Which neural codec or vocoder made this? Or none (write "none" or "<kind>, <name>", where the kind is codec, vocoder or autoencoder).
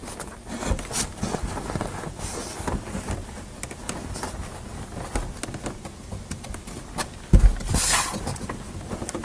none